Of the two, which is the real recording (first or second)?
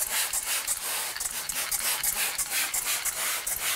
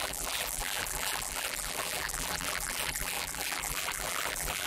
first